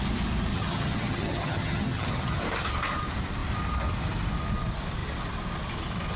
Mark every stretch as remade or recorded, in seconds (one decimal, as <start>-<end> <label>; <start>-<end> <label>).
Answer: 0.0-0.5 recorded; 0.5-2.4 remade; 2.4-6.2 recorded